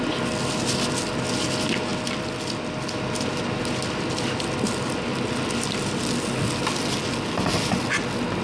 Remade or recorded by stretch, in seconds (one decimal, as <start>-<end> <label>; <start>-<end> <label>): 0.0-1.9 recorded; 1.9-6.0 remade; 6.0-8.4 recorded